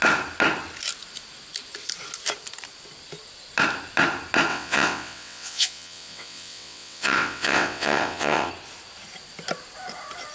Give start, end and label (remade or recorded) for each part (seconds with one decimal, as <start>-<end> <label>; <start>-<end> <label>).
0.0-4.5 recorded; 4.5-8.5 remade; 8.5-10.3 recorded